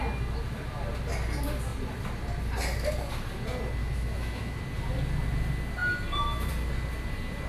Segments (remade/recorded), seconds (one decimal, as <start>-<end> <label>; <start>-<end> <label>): 0.0-3.8 recorded; 3.8-4.6 remade; 4.6-7.5 recorded